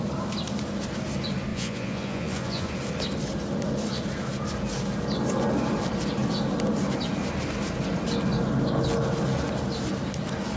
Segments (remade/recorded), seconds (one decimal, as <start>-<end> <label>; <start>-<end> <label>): 0.0-1.5 recorded; 1.5-2.7 remade; 2.7-10.6 recorded